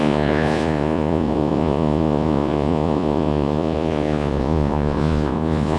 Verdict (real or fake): fake